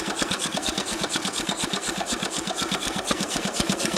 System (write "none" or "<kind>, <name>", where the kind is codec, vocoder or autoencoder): codec, SNAC